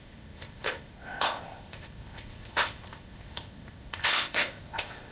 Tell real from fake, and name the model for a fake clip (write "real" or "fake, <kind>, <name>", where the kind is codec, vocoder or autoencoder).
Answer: fake, codec, ZipCodec